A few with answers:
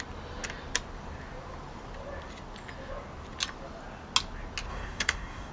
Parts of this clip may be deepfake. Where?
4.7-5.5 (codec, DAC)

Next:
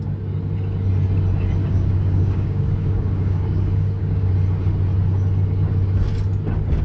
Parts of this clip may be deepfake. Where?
1.6-4.3 (codec, DAC)

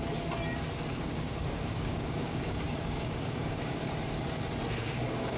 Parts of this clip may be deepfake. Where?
0.9-3.9 (codec, DAC); 4.8-5.4

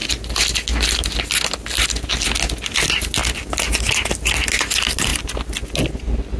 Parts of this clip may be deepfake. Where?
none

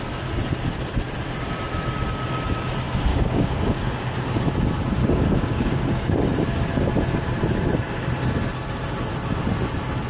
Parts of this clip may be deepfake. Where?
3.1-3.9 (codec, DAC); 5.0-6.2